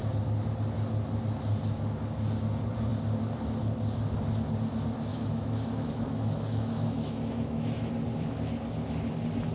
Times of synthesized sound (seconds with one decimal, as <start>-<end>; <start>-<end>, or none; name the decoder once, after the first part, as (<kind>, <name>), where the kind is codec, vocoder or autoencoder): 5.1-7.9 (autoencoder, DAC-VAE)